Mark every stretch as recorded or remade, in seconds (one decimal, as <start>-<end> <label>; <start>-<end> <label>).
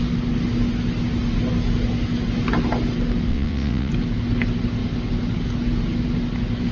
0.0-3.3 recorded; 3.3-3.9 remade; 3.9-6.7 recorded